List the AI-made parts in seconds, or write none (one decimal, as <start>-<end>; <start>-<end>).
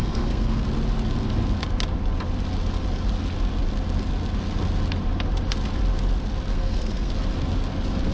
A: 0.0-0.6; 6.5-7.1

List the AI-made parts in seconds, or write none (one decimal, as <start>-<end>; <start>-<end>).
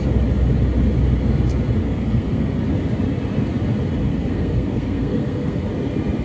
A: 1.8-2.6; 4.1-5.6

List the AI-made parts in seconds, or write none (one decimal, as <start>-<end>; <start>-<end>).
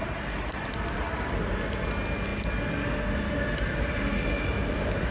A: none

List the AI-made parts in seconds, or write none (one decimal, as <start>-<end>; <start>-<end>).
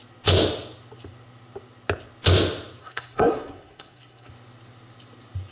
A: 2.8-4.3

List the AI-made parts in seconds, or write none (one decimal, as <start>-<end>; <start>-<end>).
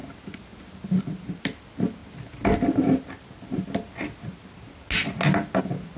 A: none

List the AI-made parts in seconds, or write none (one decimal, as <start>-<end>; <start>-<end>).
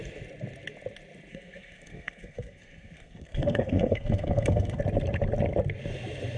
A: 1.3-4.8